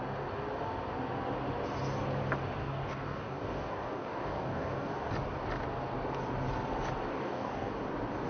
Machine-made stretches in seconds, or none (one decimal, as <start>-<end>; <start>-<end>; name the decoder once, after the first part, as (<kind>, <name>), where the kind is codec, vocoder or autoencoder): 2.6-5.1 (codec, DAC); 7.1-7.7